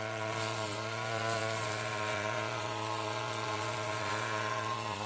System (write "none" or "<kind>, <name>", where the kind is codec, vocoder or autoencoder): vocoder, Vocos